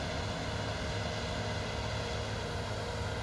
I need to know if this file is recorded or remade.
recorded